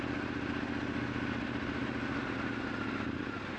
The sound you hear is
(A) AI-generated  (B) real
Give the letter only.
B